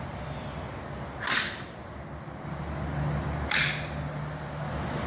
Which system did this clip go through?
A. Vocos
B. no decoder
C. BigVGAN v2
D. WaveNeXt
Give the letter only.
B